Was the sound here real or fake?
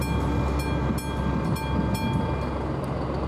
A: real